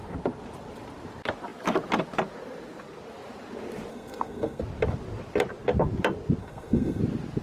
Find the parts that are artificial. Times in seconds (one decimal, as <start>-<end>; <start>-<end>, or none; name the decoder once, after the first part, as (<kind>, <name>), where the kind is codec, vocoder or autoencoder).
3.9-4.6 (codec, SNAC); 6.4-7.0